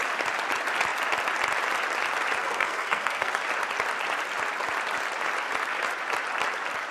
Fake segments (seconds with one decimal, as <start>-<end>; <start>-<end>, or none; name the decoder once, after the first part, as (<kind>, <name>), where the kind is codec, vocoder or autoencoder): 2.4-3.4 (codec, SNAC)